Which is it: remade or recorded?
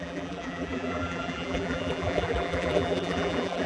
remade